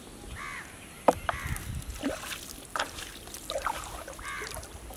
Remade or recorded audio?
recorded